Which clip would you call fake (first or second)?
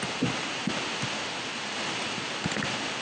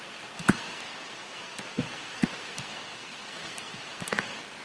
second